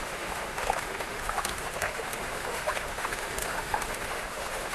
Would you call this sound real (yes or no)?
no